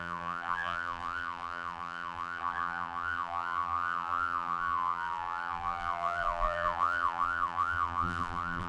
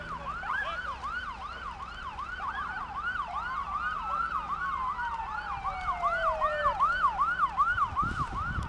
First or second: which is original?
second